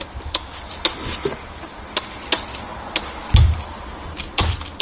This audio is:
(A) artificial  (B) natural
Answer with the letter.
B